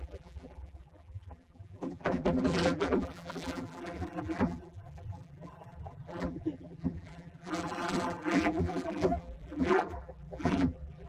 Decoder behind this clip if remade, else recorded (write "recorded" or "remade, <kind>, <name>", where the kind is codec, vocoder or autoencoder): remade, vocoder, BigVGAN v2